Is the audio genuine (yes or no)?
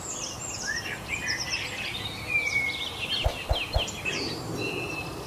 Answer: yes